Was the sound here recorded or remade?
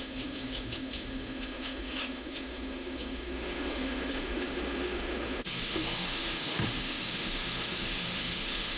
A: remade